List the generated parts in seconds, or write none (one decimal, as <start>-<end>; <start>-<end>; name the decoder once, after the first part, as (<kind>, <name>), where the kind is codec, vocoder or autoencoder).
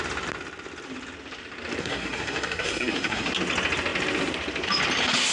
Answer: 1.8-3.3 (codec, SNAC)